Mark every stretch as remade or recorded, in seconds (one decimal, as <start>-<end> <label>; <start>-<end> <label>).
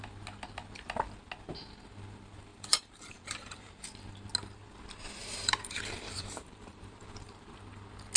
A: 0.0-2.5 recorded; 2.5-3.7 remade; 3.7-5.2 recorded; 5.2-7.5 remade; 7.5-8.2 recorded